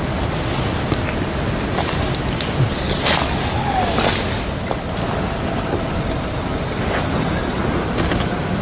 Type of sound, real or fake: real